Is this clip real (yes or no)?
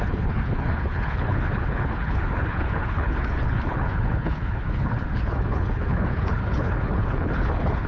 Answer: no